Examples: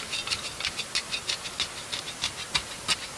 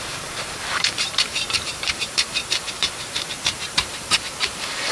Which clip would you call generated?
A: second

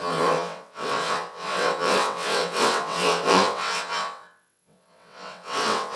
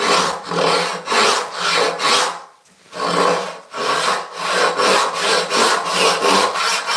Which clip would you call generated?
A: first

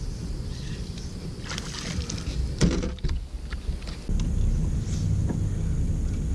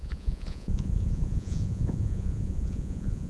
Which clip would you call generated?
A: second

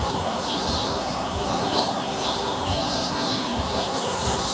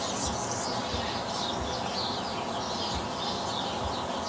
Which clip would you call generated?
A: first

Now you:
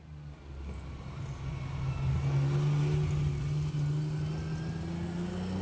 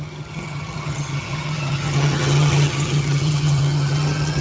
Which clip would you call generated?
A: second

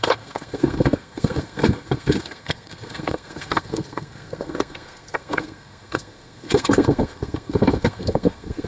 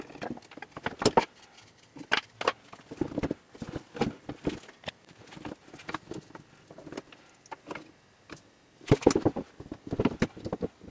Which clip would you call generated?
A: first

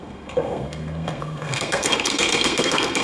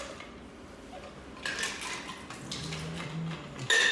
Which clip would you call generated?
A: first